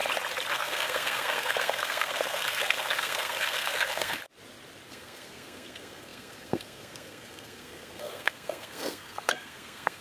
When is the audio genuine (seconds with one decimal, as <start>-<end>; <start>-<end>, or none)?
0.0-0.5; 4.2-4.9